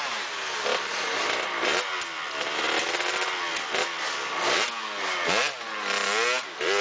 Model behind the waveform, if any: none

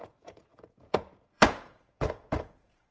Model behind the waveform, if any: vocoder, Vocos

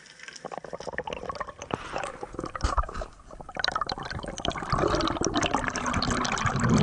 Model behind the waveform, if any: none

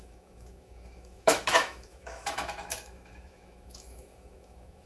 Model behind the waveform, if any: autoencoder, DAC-VAE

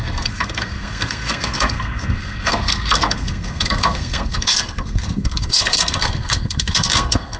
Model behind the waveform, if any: codec, SNAC